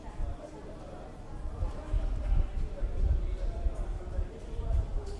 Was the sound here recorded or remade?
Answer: remade